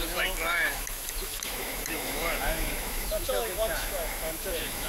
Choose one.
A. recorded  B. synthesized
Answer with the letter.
B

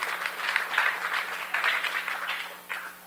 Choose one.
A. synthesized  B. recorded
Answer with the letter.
B